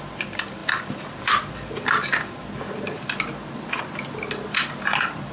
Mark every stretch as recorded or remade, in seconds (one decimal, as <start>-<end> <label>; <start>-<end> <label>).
0.0-0.6 recorded; 0.6-1.5 remade; 1.5-5.3 recorded